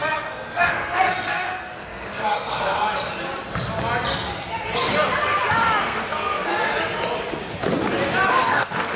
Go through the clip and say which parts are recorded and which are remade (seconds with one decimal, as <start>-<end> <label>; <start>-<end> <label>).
0.0-2.7 remade; 2.7-5.8 recorded; 5.8-6.5 remade; 6.5-8.3 recorded; 8.3-9.0 remade